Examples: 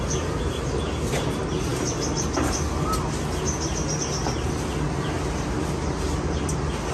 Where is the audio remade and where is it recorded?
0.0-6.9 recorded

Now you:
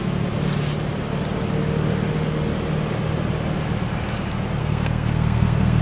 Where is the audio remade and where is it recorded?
0.0-4.6 recorded; 4.6-5.8 remade

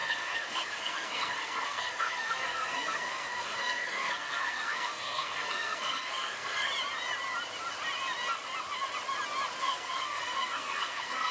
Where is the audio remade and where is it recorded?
0.0-6.7 remade; 6.7-9.6 recorded; 9.6-11.3 remade

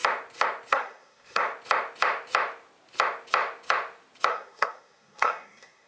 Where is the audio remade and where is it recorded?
0.0-0.7 recorded; 0.7-1.4 remade; 1.4-4.3 recorded; 4.3-5.9 remade